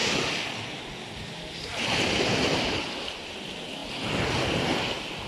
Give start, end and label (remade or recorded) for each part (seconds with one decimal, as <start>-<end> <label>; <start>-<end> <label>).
0.0-5.3 recorded

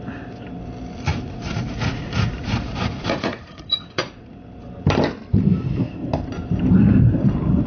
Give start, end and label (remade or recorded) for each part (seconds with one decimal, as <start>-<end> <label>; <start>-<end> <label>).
0.0-1.1 recorded; 1.1-4.4 remade; 4.4-7.7 recorded

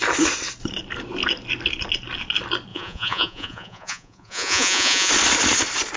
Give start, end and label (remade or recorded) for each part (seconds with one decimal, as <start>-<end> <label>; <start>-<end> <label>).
0.0-2.7 recorded; 2.7-5.1 remade; 5.1-6.0 recorded

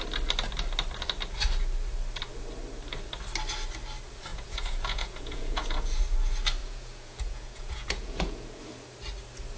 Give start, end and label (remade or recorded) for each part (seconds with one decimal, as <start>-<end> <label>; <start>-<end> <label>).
0.0-4.3 recorded; 4.3-6.0 remade; 6.0-6.6 recorded; 6.6-8.6 remade; 8.6-9.6 recorded

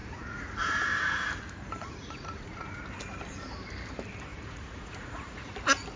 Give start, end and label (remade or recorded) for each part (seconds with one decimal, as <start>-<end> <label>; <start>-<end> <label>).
0.0-0.7 remade; 0.7-1.8 recorded; 1.8-2.8 remade; 2.8-4.3 recorded; 4.3-5.5 remade; 5.5-6.0 recorded